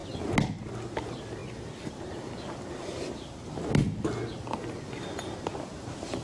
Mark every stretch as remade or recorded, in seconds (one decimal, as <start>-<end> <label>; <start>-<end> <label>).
0.0-6.2 recorded